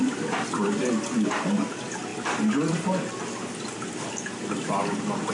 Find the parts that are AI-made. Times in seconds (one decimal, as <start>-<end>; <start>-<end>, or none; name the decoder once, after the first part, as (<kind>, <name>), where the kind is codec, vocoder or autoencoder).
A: 0.0-2.1 (vocoder, BigVGAN v2); 3.2-5.3